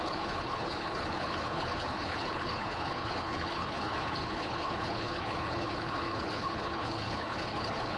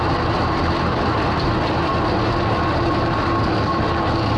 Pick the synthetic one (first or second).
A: first